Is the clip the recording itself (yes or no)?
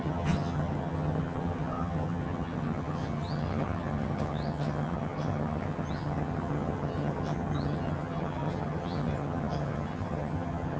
no